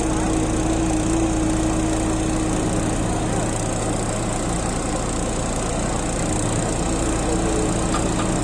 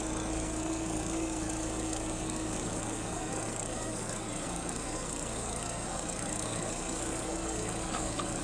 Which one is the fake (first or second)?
second